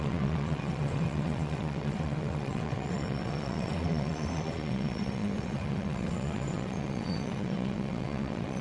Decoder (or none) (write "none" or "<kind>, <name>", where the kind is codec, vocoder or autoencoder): vocoder, WaveNeXt